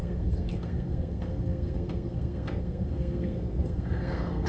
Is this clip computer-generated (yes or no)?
yes